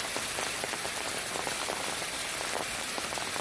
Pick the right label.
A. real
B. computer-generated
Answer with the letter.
A